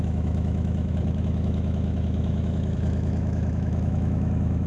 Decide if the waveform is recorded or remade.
remade